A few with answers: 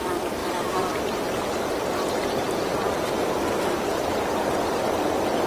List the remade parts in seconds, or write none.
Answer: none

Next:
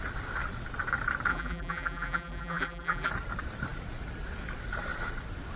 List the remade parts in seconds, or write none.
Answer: 1.3-3.1 (vocoder, BigVGAN v2)

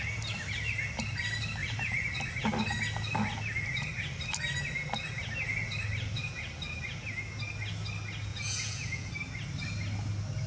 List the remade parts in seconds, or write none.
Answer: 8.3-9.1 (vocoder, Vocos)